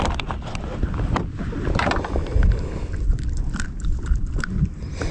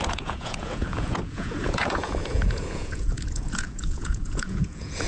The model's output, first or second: second